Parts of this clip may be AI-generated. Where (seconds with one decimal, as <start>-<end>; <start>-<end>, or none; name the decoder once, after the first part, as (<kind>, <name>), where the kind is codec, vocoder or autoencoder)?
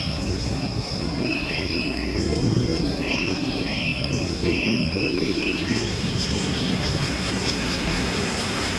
0.0-8.8 (codec, SNAC)